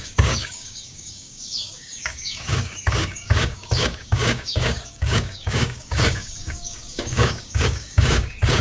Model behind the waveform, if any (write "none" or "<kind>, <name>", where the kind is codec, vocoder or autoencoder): codec, DAC